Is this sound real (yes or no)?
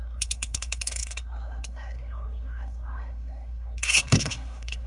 no